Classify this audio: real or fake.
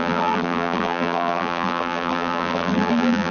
fake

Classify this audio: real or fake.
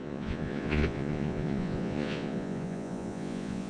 fake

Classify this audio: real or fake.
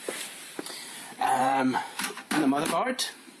fake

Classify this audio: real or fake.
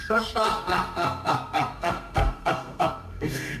fake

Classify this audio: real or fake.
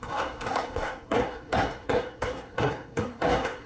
fake